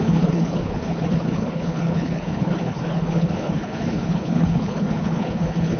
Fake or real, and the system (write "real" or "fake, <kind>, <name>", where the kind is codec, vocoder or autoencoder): fake, codec, HILCodec